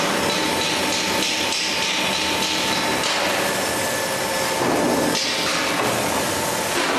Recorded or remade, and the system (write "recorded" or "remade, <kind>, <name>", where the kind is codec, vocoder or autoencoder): recorded